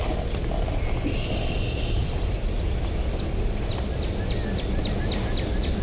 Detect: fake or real real